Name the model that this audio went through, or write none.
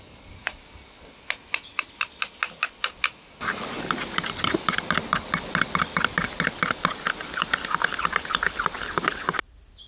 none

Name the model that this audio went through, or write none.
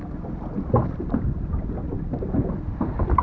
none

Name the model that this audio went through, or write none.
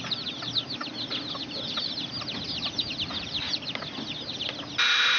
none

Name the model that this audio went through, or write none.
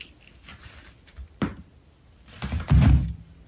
none